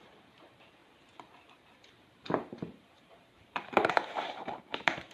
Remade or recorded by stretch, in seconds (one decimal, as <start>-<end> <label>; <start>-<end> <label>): 0.0-5.1 remade